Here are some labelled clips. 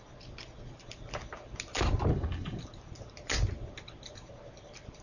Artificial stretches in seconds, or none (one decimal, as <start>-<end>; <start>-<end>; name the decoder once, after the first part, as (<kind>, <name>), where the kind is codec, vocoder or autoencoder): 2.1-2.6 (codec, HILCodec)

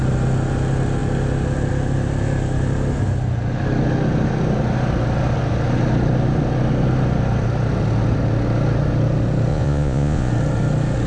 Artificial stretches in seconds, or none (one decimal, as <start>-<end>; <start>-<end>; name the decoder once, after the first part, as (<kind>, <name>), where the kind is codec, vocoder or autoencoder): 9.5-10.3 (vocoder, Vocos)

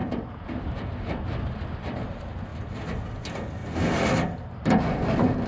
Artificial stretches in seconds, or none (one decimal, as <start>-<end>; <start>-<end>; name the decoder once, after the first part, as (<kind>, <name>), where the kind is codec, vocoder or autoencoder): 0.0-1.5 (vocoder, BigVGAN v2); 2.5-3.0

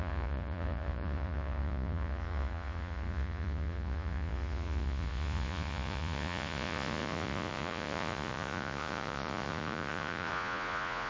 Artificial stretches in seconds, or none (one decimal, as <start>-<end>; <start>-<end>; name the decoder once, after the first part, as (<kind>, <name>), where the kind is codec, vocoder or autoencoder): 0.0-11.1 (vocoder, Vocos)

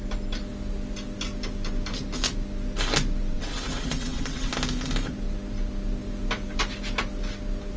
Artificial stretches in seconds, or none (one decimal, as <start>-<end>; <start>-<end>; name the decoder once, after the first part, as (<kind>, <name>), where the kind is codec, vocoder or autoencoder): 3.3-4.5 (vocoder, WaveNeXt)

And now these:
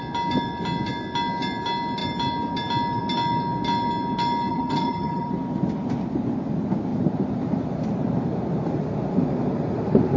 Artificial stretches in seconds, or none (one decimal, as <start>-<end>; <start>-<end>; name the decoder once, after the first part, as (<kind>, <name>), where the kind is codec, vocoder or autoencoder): 4.5-5.3 (vocoder, HiFi-GAN)